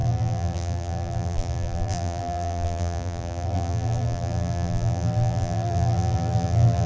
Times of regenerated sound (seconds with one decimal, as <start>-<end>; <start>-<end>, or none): 0.0-6.9